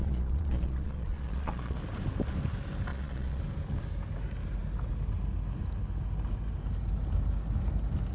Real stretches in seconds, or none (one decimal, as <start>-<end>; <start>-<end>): 1.8-2.9; 3.4-8.1